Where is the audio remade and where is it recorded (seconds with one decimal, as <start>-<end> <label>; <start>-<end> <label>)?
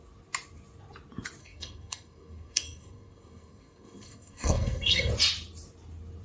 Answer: 0.0-1.4 recorded; 1.4-5.1 remade; 5.1-6.2 recorded